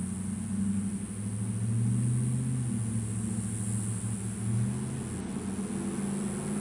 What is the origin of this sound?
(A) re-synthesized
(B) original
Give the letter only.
B